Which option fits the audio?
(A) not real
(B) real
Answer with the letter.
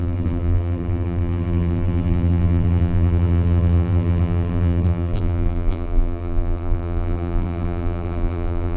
A